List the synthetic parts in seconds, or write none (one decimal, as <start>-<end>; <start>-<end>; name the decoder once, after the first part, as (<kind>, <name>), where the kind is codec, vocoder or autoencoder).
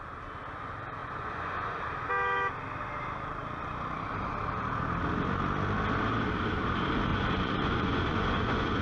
1.0-1.8 (vocoder, Vocos); 7.1-8.8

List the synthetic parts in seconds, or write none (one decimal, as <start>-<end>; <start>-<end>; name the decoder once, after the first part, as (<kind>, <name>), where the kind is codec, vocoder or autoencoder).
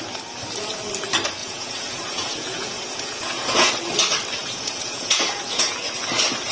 1.4-3.7 (vocoder, Vocos); 4.4-5.9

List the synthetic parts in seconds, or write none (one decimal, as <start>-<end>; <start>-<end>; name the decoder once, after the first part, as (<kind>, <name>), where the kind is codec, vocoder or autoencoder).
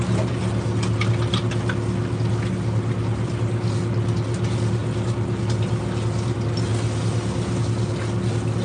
none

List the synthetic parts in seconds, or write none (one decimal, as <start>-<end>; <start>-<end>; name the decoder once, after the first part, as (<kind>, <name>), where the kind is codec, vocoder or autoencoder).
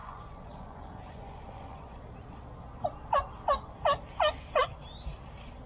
0.0-2.0 (vocoder, Vocos)